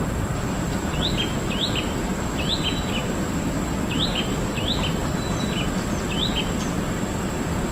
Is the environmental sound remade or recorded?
recorded